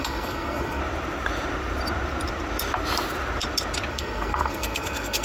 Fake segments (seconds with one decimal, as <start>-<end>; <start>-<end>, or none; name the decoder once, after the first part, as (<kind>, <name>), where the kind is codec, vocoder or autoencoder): 0.0-0.8 (codec, SNAC); 3.9-5.2